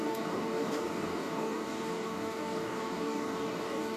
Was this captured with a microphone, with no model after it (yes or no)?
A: no